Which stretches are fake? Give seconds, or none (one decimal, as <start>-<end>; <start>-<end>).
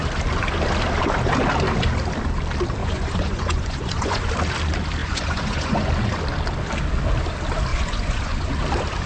2.8-4.3; 5.0-5.9; 7.7-8.5